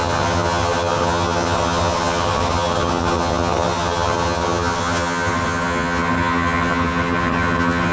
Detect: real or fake fake